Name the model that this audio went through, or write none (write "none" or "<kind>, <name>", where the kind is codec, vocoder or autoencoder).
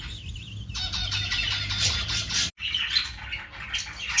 none